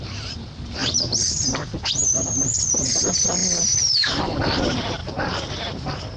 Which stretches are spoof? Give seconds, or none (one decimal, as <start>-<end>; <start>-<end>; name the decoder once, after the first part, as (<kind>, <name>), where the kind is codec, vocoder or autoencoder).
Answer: 0.0-5.0 (vocoder, BigVGAN v2)